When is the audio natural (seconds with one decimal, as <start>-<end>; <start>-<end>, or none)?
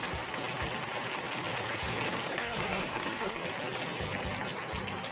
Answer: 0.0-2.3; 3.4-5.1